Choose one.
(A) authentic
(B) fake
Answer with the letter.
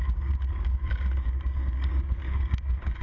B